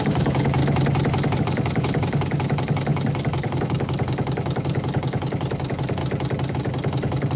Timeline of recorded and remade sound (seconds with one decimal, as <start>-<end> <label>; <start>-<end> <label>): 0.0-0.6 remade; 0.6-1.4 recorded; 1.4-6.0 remade; 6.0-6.5 recorded; 6.5-7.4 remade